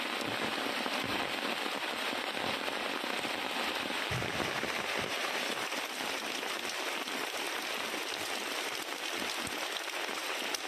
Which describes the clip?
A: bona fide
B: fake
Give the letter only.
A